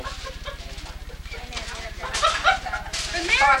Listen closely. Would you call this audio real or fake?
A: real